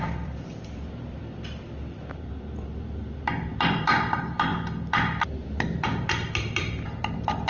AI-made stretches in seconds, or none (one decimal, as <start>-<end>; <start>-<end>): 0.0-4.5; 7.0-7.5